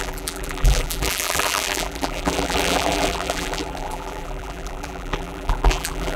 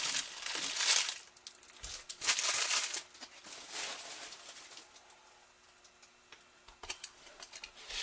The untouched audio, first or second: second